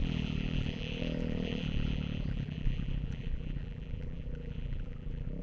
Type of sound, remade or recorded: remade